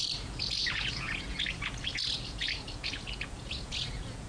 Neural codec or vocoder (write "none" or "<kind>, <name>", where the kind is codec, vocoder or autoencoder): vocoder, Vocos